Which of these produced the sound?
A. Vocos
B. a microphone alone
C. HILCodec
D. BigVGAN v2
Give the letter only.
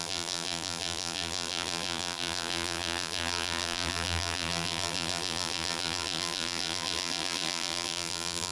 D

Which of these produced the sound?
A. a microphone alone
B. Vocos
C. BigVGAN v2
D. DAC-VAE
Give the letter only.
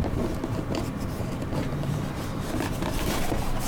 C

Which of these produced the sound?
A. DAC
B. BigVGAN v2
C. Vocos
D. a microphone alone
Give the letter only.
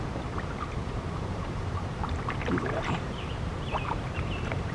B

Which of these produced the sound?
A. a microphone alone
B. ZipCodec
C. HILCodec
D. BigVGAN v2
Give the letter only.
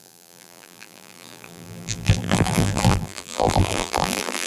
D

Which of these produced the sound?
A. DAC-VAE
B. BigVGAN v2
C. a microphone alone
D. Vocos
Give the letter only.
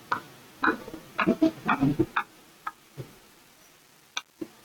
C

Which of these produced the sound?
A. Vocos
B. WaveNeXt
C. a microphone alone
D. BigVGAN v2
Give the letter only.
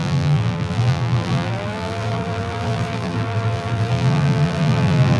D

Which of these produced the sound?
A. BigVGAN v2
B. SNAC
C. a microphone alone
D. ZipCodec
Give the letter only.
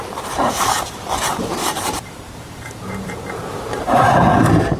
A